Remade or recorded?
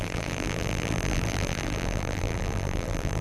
remade